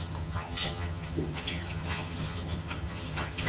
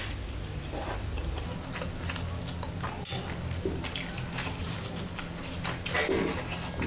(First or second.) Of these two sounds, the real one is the second